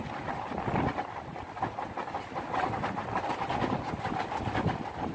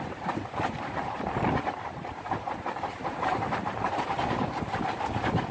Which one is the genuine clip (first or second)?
first